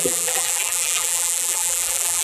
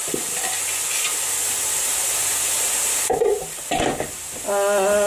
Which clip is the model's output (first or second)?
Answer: first